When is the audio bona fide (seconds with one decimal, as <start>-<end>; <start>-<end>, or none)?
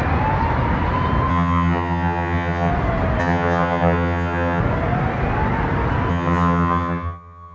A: 0.0-1.3; 2.7-3.2; 4.6-6.1